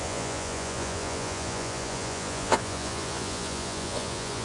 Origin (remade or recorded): remade